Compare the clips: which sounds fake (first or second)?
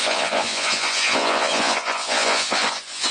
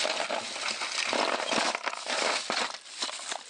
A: first